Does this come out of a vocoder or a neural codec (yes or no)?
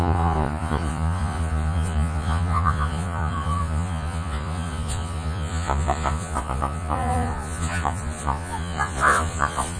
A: yes